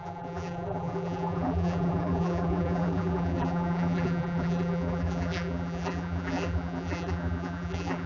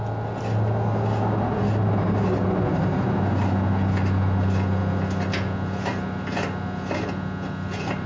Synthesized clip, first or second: first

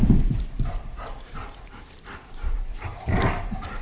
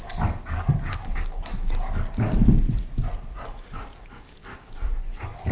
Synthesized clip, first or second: first